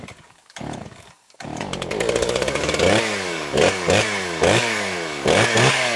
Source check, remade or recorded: remade